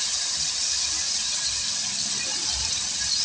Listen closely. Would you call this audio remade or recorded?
recorded